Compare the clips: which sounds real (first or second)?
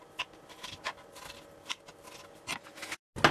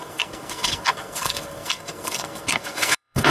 first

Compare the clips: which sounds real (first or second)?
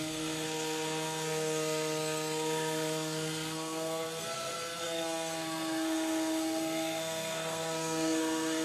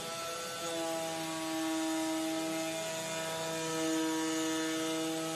second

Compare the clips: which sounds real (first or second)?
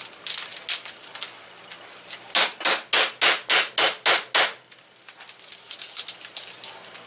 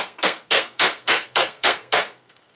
first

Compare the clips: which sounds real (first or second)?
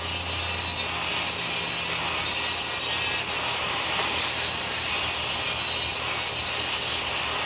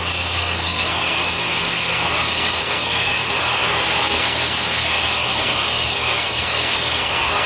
first